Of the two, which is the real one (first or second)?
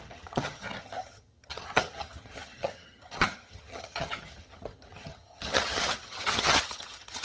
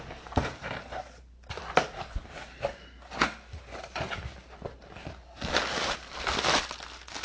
second